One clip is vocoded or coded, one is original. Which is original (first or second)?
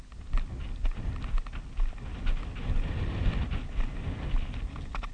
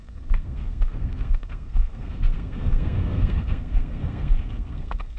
first